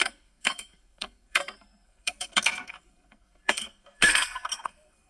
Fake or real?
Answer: fake